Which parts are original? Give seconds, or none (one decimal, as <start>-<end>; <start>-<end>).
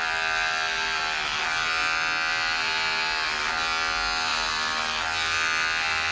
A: 0.0-6.1